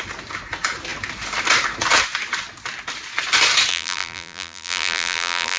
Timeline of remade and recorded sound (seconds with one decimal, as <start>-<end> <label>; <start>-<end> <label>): 0.0-3.7 recorded; 3.7-5.6 remade